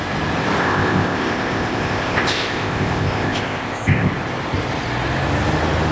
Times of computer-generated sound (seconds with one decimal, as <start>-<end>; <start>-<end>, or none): 0.6-4.1